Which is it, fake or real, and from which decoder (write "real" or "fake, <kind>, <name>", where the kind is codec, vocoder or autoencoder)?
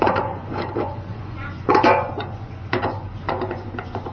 fake, vocoder, Vocos